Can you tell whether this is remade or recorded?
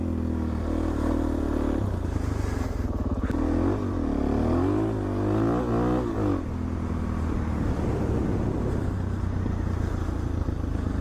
recorded